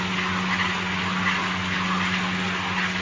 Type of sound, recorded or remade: recorded